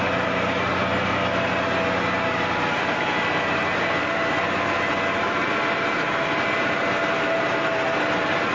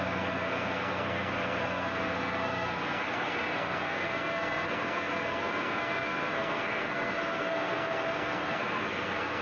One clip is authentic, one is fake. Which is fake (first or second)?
second